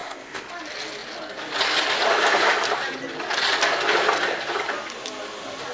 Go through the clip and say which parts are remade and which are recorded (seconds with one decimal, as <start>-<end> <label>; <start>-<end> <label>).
0.0-0.5 remade; 0.5-5.7 recorded